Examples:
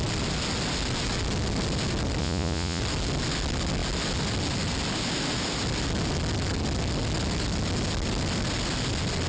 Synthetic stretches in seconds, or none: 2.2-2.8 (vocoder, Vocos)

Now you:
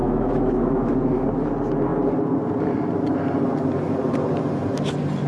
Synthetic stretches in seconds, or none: 0.0-0.9 (autoencoder, DAC-VAE)

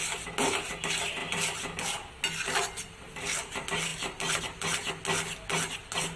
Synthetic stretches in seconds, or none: 3.9-4.4 (vocoder, BigVGAN v2)

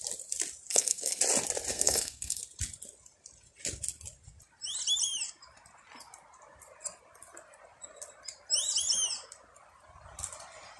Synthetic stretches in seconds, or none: 0.7-1.2 (codec, SNAC); 1.7-2.4

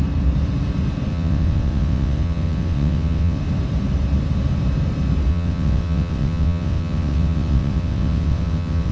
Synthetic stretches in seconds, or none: 1.1-3.4 (vocoder, WaveNeXt); 5.3-8.9

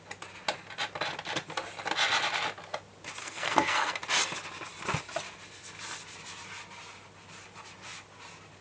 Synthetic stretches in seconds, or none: 3.2-4.0 (codec, SNAC)